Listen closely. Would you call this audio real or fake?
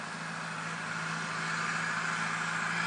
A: real